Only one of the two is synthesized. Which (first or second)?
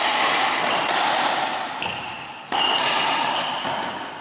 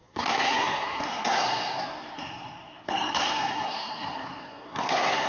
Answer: second